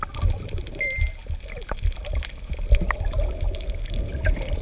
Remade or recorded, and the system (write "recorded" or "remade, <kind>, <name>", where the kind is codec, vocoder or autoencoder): recorded